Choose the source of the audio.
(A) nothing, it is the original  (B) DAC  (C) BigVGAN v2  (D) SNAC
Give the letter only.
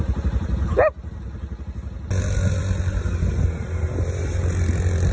A